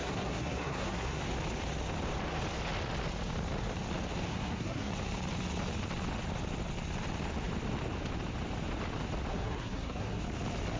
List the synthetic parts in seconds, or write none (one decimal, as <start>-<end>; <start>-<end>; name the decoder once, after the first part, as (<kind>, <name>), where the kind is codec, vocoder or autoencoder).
0.0-1.2 (codec, SNAC); 4.3-4.9; 9.3-10.2